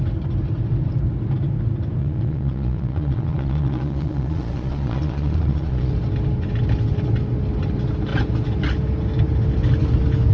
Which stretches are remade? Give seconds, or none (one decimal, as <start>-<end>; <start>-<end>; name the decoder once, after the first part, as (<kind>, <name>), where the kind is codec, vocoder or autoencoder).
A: 2.0-5.9 (vocoder, Vocos)